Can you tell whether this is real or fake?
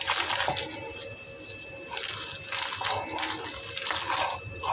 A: real